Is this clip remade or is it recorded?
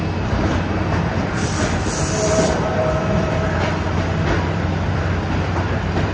remade